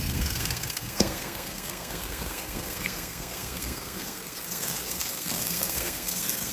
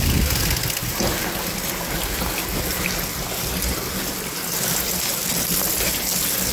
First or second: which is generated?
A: first